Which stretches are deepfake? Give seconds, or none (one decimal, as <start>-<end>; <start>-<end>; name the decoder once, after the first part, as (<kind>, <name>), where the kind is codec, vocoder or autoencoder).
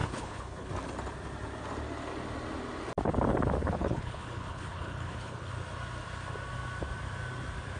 0.0-0.7 (codec, HILCodec); 3.6-5.5